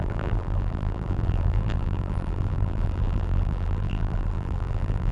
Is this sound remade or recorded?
remade